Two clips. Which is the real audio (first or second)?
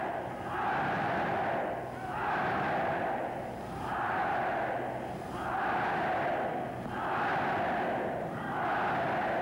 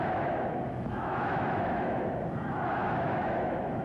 first